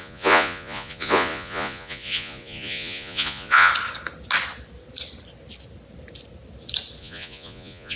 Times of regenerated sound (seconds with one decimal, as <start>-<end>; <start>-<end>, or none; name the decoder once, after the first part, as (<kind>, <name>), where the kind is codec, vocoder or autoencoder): 0.0-3.7 (vocoder, Vocos); 7.0-8.0